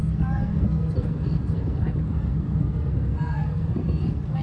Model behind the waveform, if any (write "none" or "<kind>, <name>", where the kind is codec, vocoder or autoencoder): codec, SNAC